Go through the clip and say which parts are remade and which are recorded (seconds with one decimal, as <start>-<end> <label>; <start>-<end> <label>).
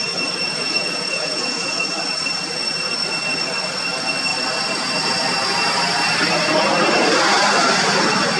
0.0-0.4 recorded; 0.4-1.8 remade; 1.8-8.4 recorded